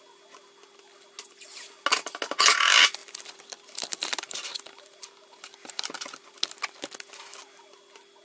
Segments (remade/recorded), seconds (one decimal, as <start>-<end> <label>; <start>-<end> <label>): 0.0-3.0 recorded; 3.0-5.7 remade; 5.7-8.2 recorded